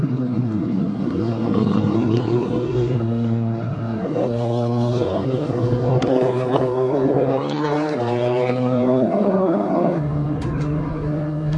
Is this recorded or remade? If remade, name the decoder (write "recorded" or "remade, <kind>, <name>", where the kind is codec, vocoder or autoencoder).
remade, codec, SNAC